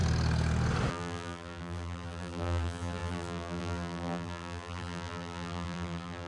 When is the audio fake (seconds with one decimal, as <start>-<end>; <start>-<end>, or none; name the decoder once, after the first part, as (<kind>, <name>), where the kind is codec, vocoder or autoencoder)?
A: 0.9-6.3 (vocoder, BigVGAN v2)